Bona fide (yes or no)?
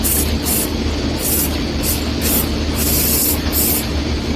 yes